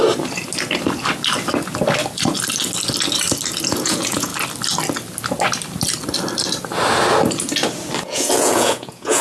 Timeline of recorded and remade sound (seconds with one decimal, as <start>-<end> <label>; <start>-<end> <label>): 0.0-3.7 recorded; 3.7-4.3 remade; 4.3-8.0 recorded; 8.0-9.2 remade